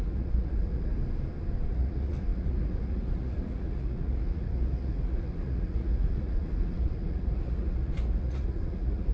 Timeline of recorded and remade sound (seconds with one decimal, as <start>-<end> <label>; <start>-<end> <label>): 0.0-0.9 remade; 0.9-1.7 recorded; 1.7-9.1 remade

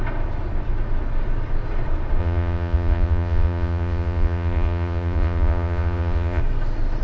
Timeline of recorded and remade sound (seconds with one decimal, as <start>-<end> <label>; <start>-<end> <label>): 0.0-2.2 recorded; 2.2-6.4 remade; 6.4-7.0 recorded

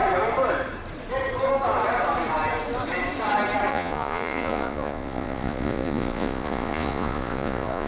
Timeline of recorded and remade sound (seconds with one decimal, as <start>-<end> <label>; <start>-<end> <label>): 0.0-3.7 recorded; 3.7-7.9 remade

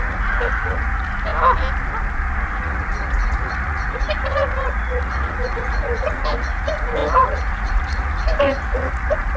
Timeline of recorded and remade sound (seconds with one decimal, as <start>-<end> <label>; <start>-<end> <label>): 0.0-1.3 remade; 1.3-2.5 recorded; 2.5-9.4 remade

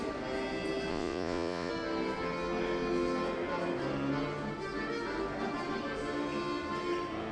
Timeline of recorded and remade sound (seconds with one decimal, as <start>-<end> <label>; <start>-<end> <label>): 0.0-0.9 recorded; 0.9-1.7 remade; 1.7-7.3 recorded

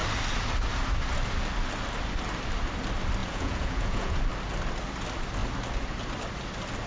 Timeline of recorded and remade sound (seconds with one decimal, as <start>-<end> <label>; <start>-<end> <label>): 0.0-3.2 recorded; 3.2-4.2 remade; 4.2-6.9 recorded

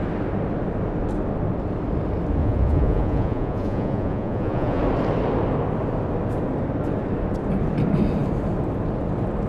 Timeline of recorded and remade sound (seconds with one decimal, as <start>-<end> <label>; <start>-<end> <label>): 0.0-2.4 recorded; 2.4-4.8 remade; 4.8-9.5 recorded

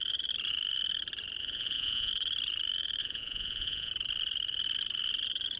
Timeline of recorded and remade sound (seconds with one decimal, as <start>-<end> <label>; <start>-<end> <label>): 0.0-1.4 recorded; 1.4-2.1 remade; 2.1-3.0 recorded; 3.0-3.9 remade; 3.9-5.6 recorded